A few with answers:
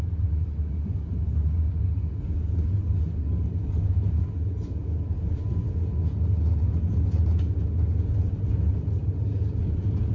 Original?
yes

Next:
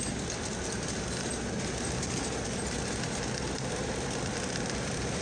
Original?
yes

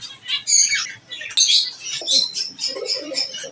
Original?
yes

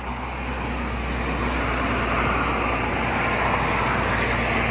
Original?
yes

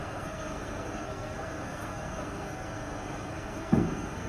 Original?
no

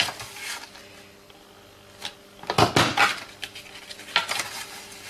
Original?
yes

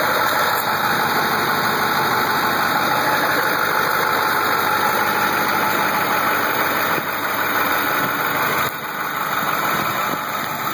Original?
yes